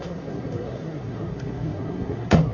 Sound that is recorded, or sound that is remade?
remade